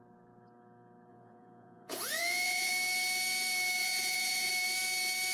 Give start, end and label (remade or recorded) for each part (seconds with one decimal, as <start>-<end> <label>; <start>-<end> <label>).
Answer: 0.0-1.1 recorded; 1.1-2.7 remade; 2.7-3.8 recorded; 3.8-4.5 remade; 4.5-5.3 recorded